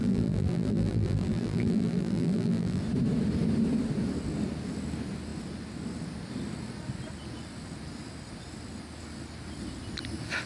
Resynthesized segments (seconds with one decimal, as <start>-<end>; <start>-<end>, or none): 0.0-2.8